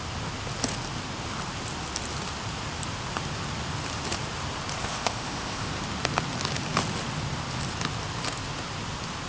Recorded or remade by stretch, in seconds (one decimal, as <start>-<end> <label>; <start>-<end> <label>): 0.0-4.8 recorded; 4.8-5.7 remade; 5.7-9.3 recorded